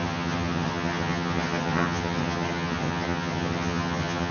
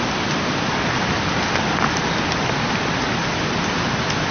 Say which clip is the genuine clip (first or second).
second